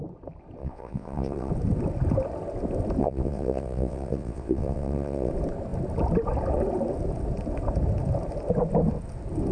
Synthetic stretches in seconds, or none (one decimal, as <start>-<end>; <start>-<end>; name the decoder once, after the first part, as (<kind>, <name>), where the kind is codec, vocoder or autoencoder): 0.6-1.5 (vocoder, WaveNeXt); 3.0-5.3